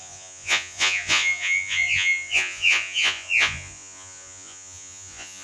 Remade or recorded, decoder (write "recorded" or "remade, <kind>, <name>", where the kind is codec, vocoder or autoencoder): remade, vocoder, Vocos